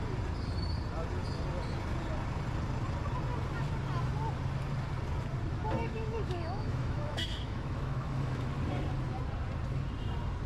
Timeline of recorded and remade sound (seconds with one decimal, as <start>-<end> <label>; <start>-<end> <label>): 0.0-5.8 recorded; 5.8-8.5 remade; 8.5-10.5 recorded